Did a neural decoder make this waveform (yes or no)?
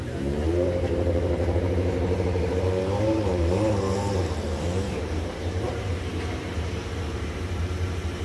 yes